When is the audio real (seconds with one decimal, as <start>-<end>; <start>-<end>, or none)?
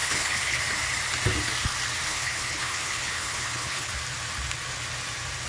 0.6-2.1; 3.9-5.5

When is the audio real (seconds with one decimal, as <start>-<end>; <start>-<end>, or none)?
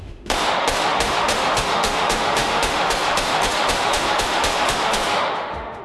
none